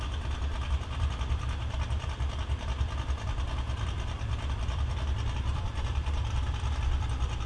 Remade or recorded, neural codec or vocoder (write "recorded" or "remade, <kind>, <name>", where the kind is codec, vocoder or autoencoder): remade, vocoder, BigVGAN v2